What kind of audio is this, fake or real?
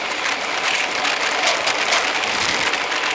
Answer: real